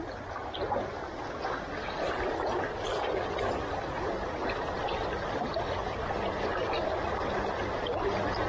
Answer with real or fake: real